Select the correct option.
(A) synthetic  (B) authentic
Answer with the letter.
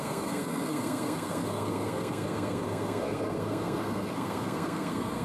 A